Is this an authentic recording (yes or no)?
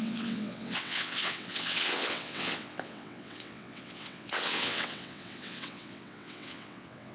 no